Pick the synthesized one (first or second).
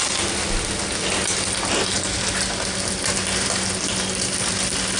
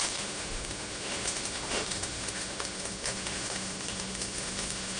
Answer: second